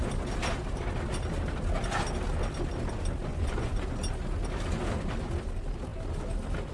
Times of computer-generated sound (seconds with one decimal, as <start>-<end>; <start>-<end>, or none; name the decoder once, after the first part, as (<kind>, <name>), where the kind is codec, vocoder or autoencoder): 3.3-3.8 (vocoder, Vocos)